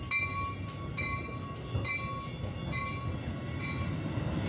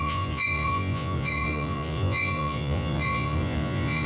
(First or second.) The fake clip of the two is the second